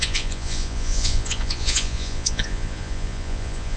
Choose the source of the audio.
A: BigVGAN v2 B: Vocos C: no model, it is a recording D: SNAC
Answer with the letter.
B